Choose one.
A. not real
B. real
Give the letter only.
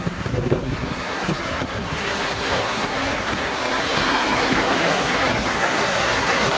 A